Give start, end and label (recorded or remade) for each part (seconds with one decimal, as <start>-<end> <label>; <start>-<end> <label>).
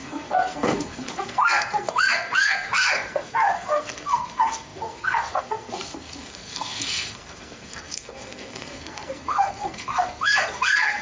0.0-11.0 remade